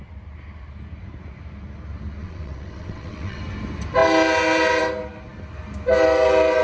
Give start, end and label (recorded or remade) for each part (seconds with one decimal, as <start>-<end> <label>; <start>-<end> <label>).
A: 0.0-2.2 recorded; 2.2-3.4 remade; 3.4-6.6 recorded